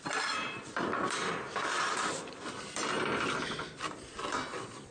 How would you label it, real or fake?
fake